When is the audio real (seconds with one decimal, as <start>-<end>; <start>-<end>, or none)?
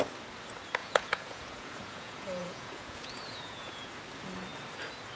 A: 0.0-0.8; 3.9-5.2